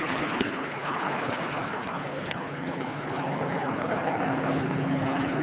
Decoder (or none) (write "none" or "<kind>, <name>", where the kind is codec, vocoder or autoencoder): codec, HILCodec